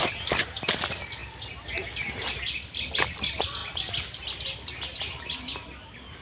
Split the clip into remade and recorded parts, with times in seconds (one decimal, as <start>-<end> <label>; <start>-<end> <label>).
0.0-6.2 recorded